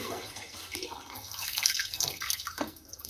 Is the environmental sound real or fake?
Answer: fake